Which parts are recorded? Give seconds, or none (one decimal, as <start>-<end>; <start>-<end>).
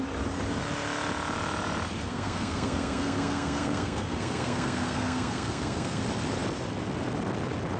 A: 0.0-2.1; 6.0-7.8